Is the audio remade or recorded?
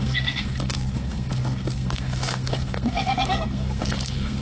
remade